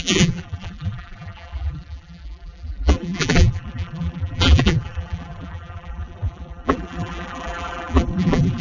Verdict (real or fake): fake